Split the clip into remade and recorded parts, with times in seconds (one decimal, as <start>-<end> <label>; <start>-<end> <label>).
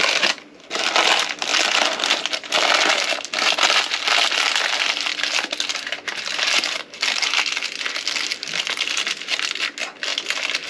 0.0-10.7 recorded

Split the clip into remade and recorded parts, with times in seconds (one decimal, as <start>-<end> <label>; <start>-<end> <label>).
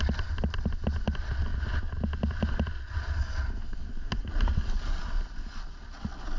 0.0-6.4 recorded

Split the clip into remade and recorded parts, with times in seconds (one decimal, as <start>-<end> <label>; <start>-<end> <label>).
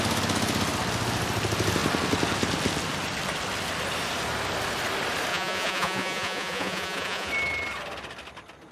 0.0-5.3 recorded; 5.3-7.3 remade; 7.3-8.7 recorded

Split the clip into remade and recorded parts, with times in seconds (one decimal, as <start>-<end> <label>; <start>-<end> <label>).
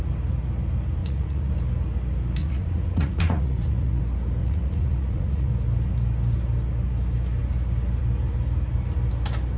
0.0-1.0 recorded; 1.0-1.5 remade; 1.5-2.4 recorded; 2.4-4.0 remade; 4.0-4.4 recorded; 4.4-5.5 remade; 5.5-9.6 recorded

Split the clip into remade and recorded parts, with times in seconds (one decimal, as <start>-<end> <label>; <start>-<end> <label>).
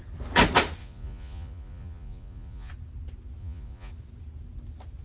0.0-0.8 recorded; 0.8-2.7 remade; 2.7-3.4 recorded; 3.4-3.9 remade; 3.9-5.0 recorded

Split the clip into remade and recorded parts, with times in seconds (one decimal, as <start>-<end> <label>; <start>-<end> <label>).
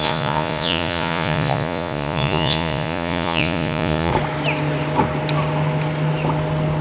0.0-4.1 remade; 4.1-6.8 recorded